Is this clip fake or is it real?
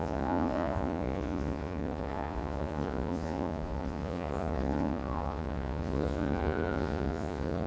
fake